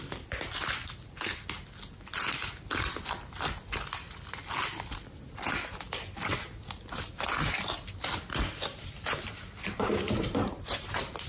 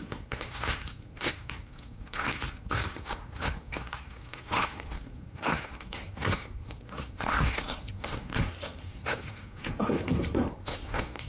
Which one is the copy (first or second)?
second